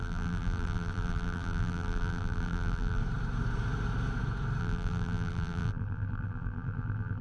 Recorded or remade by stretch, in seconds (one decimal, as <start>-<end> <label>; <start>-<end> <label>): 0.0-3.0 remade; 3.0-4.6 recorded; 4.6-7.2 remade